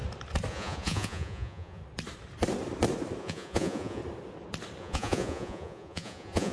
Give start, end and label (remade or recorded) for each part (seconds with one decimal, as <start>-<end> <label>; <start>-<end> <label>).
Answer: 0.0-0.5 recorded; 0.5-1.8 remade; 1.8-3.2 recorded; 3.2-4.0 remade; 4.0-4.8 recorded; 4.8-6.5 remade